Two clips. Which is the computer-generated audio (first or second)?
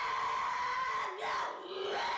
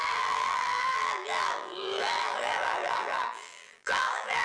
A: second